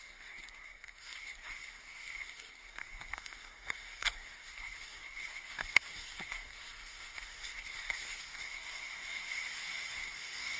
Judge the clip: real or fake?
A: fake